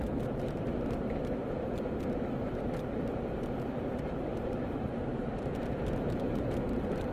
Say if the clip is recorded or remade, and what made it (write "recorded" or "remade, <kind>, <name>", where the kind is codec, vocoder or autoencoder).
remade, vocoder, BigVGAN v2